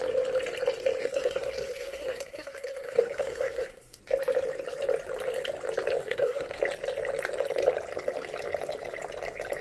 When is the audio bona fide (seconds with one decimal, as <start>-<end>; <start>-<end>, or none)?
0.0-1.0; 4.0-6.0; 6.6-9.6